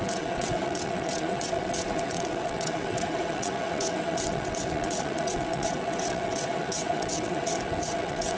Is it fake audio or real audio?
fake